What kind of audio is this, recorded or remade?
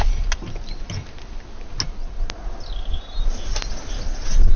recorded